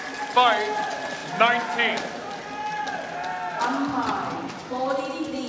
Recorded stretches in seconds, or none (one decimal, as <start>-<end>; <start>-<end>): 0.0-5.5